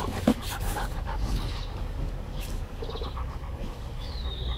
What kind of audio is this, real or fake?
fake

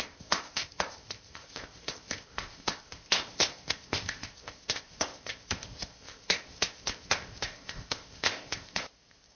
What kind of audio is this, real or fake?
fake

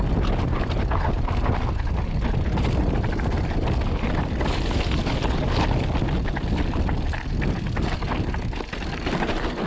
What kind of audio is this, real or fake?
real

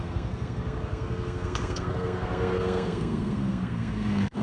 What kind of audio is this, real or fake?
fake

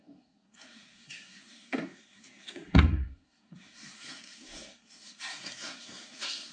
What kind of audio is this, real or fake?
fake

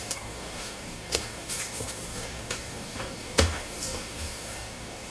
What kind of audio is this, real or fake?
fake